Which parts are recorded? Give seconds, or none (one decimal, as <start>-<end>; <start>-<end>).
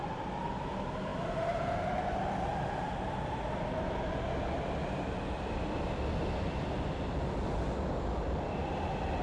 0.0-9.2